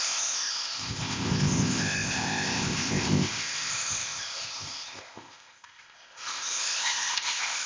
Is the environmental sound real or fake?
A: fake